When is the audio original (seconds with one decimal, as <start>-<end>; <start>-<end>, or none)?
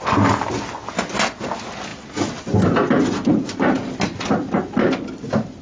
0.0-5.6